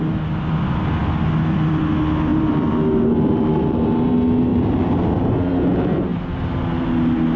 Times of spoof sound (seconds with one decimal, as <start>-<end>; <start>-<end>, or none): 1.0-1.8; 2.3-4.1; 4.5-5.5